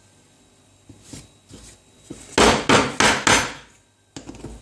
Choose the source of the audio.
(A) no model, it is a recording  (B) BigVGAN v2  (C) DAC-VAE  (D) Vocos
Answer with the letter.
A